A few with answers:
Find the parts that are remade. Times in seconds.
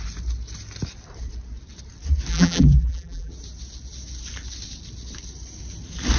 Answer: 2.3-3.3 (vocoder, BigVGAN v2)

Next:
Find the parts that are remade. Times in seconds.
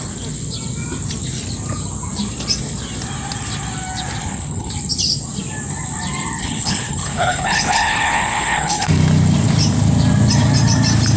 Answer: 4.2-4.7 (codec, HILCodec); 6.4-8.9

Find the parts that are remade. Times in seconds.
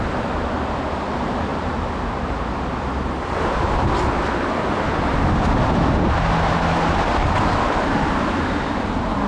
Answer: none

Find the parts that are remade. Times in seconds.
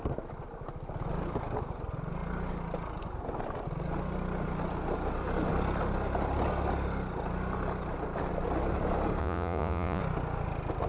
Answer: 9.2-10.0 (vocoder, Vocos)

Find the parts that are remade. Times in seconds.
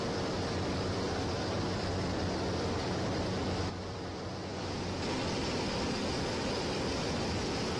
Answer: 0.0-4.5 (vocoder, BigVGAN v2); 6.5-7.8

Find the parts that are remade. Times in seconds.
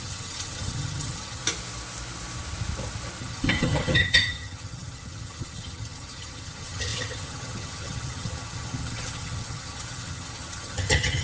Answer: 0.0-1.4 (vocoder, HiFi-GAN); 3.2-11.2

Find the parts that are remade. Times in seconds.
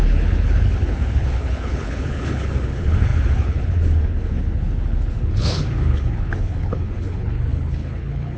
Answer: 0.0-8.4 (codec, HILCodec)